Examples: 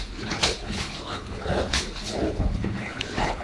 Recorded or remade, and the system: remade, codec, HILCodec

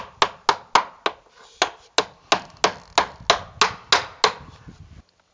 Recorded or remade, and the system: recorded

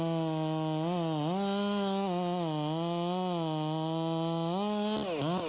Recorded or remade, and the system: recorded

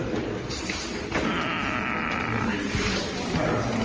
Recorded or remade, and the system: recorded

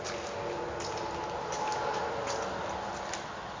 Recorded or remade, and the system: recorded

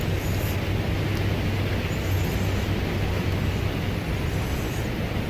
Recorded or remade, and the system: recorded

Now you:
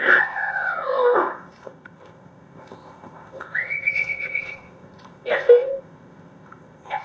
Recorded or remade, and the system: remade, codec, ZipCodec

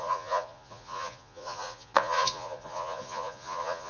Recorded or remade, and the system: remade, vocoder, Vocos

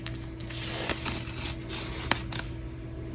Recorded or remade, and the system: recorded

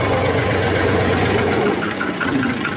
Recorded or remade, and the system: remade, vocoder, Vocos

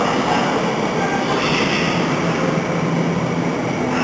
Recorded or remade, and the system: recorded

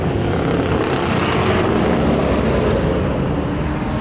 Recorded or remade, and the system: recorded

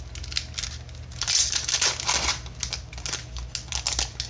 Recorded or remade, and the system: recorded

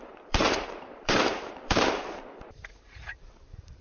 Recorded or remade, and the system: remade, vocoder, BigVGAN v2